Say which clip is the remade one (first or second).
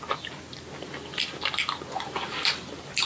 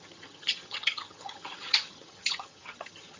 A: second